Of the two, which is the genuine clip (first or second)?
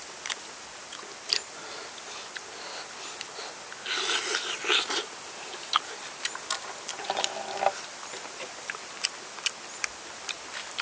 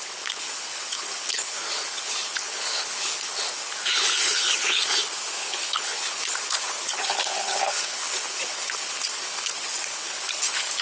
first